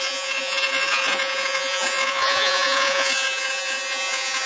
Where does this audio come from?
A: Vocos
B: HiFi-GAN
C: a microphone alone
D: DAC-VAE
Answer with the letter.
A